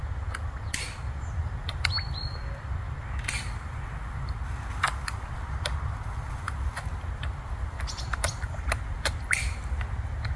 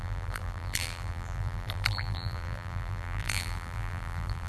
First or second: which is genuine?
first